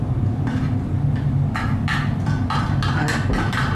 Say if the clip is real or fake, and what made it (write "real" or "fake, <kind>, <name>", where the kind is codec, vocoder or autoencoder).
real